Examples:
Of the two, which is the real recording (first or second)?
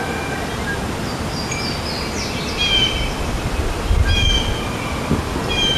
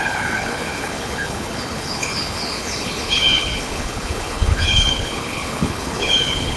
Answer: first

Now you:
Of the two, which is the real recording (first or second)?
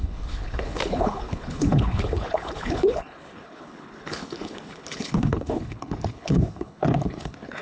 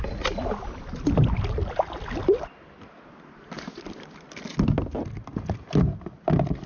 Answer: second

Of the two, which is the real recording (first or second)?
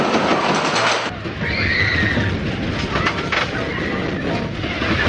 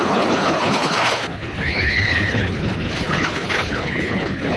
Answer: first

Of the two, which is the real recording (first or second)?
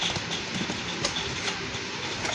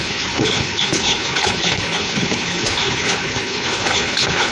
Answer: first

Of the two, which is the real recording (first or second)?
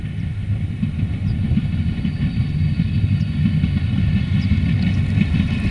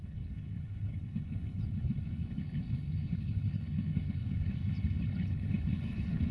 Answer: first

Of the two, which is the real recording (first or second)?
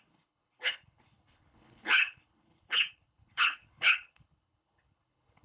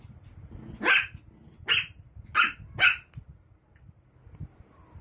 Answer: second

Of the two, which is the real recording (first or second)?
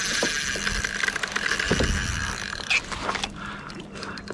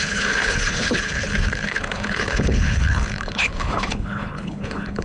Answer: first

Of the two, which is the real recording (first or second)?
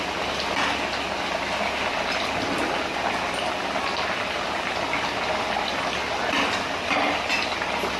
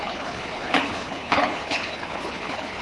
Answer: first